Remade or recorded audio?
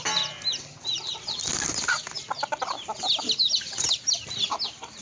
recorded